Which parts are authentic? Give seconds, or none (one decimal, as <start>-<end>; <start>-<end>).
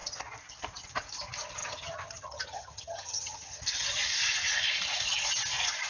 0.0-1.6; 3.6-5.9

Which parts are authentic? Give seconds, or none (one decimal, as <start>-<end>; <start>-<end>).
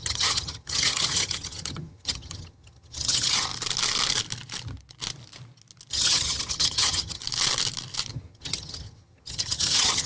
3.5-5.9; 7.2-8.1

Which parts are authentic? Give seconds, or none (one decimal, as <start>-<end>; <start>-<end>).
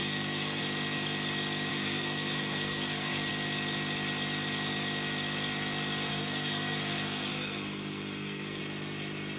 0.6-1.7; 3.3-6.1; 8.6-9.4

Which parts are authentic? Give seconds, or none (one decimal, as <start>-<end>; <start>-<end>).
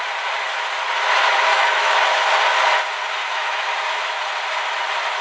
0.0-1.5; 2.2-3.2; 4.2-5.2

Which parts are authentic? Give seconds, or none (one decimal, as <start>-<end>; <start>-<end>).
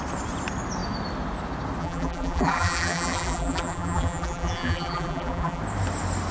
0.0-1.8; 5.6-6.3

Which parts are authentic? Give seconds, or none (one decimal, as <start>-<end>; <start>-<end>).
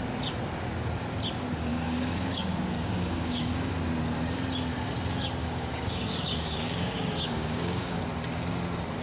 0.0-1.7; 3.7-5.4; 8.0-9.0